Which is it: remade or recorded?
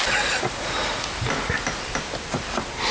recorded